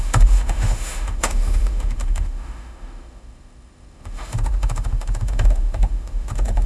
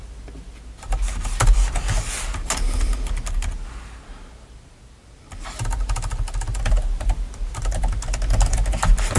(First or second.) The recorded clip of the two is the second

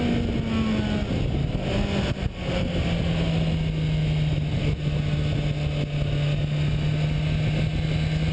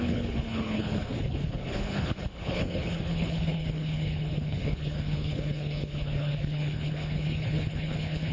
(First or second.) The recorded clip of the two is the first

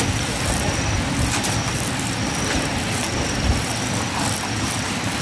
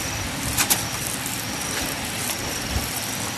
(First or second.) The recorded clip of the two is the first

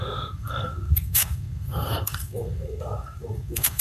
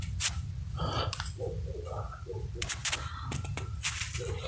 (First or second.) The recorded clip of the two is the second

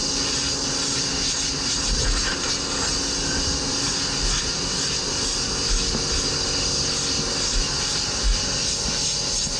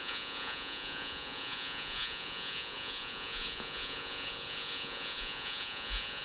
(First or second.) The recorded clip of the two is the first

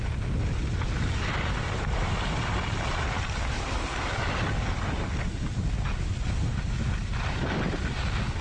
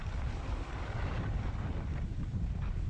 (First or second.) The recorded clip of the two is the first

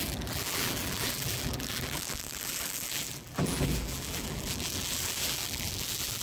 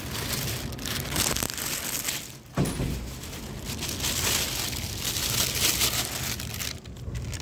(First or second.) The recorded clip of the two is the second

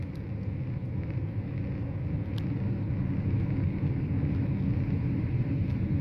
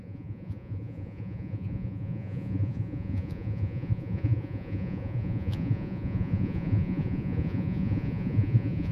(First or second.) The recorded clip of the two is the first